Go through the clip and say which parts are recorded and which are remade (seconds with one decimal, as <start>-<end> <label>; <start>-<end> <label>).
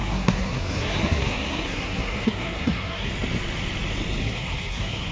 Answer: 0.0-3.1 remade; 3.1-4.2 recorded; 4.2-5.1 remade